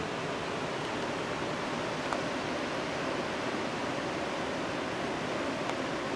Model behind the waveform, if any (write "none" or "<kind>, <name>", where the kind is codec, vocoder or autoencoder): none